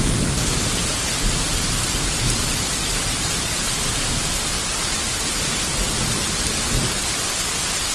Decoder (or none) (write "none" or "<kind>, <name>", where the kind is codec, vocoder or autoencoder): none